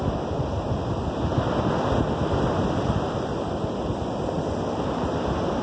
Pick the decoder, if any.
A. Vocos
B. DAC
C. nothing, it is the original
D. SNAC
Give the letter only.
C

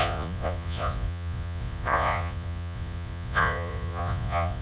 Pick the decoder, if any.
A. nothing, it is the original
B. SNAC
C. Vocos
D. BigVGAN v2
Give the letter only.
C